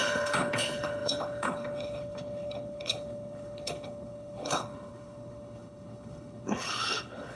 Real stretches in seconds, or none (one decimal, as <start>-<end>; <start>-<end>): none